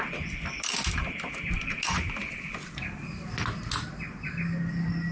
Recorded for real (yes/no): yes